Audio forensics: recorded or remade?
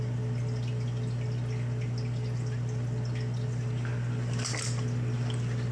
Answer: recorded